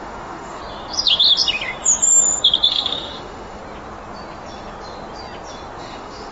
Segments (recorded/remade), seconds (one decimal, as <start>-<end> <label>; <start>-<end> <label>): 0.0-0.6 remade; 0.6-2.7 recorded; 2.7-3.6 remade; 3.6-5.8 recorded; 5.8-6.3 remade